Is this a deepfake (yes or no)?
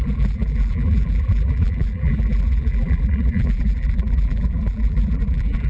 yes